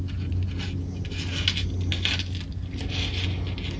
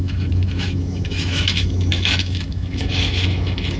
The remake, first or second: second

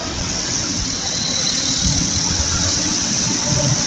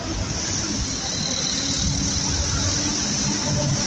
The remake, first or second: first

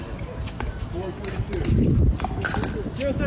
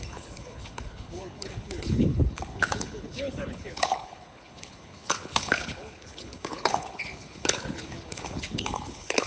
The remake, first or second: second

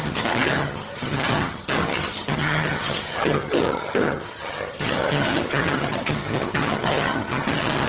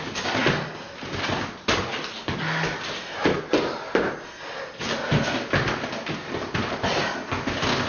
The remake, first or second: first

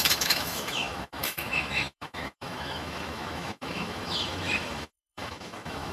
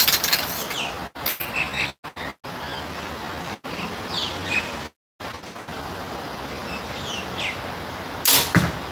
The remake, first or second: first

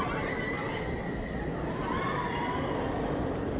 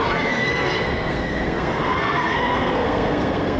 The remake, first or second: second